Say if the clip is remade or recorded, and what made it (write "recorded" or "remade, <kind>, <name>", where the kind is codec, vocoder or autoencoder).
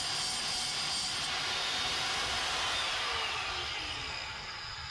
recorded